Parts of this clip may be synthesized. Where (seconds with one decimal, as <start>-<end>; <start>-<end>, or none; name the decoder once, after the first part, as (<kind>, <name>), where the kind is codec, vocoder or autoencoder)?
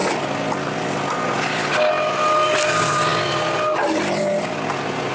none